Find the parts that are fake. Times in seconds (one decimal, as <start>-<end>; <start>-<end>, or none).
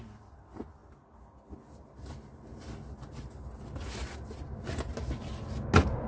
none